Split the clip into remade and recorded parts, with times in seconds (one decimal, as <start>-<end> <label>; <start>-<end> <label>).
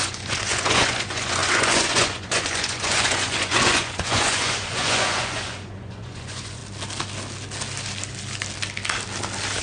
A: 0.0-6.6 remade; 6.6-9.6 recorded